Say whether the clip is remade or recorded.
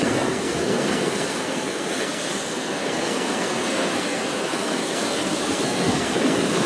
remade